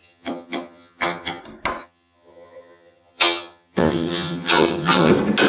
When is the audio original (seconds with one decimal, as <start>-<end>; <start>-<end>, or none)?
1.4-1.8; 5.1-5.5